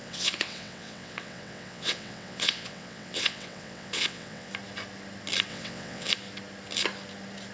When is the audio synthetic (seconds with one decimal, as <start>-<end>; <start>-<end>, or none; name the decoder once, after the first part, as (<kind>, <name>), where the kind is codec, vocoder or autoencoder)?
0.0-4.5 (vocoder, WaveNeXt); 5.5-6.1

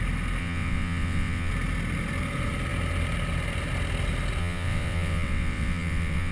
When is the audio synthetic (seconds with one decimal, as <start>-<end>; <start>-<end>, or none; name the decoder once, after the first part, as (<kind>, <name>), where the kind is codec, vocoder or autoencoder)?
0.4-1.5 (vocoder, WaveNeXt); 4.4-6.3

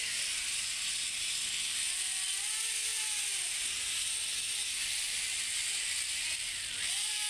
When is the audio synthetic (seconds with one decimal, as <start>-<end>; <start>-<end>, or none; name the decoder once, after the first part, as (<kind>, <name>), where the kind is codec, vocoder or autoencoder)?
none

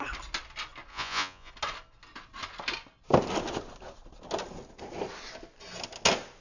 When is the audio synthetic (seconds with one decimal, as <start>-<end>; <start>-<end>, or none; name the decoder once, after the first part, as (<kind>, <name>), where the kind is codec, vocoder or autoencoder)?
0.9-1.5 (vocoder, Vocos)